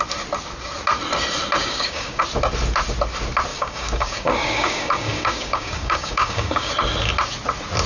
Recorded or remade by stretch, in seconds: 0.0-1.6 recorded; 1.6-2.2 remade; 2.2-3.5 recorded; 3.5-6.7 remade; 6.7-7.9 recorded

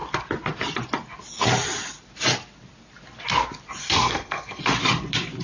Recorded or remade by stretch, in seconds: 0.0-3.8 recorded; 3.8-4.6 remade; 4.6-5.4 recorded

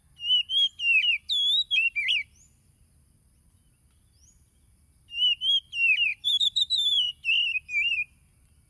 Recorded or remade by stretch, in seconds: 0.0-6.1 recorded; 6.1-7.1 remade; 7.1-8.7 recorded